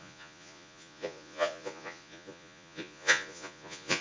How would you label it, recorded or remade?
remade